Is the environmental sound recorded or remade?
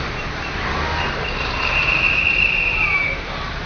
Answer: remade